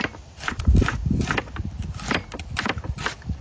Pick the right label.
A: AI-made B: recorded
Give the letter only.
A